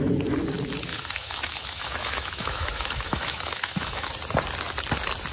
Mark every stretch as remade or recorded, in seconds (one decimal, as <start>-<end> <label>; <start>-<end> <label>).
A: 0.0-0.9 recorded; 0.9-4.1 remade; 4.1-5.3 recorded